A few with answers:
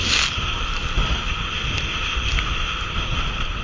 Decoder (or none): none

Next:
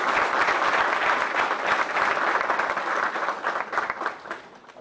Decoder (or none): none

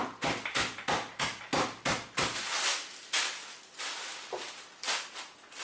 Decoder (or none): none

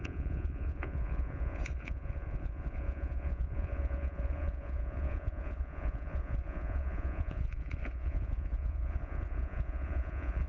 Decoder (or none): vocoder, Vocos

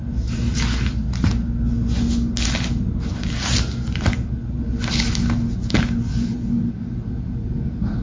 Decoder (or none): none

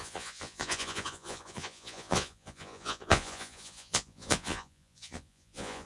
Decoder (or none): vocoder, Vocos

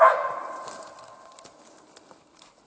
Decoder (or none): none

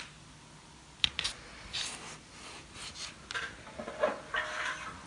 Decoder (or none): none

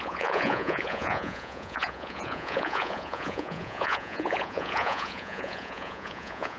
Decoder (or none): vocoder, Vocos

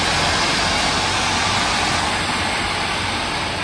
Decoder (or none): none